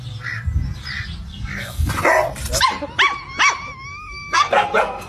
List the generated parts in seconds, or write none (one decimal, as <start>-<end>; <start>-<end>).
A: 1.3-1.9; 3.9-5.1